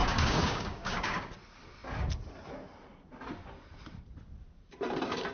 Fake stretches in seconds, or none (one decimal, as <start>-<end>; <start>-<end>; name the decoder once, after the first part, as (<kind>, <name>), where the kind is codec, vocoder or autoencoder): 0.0-1.3 (codec, DAC)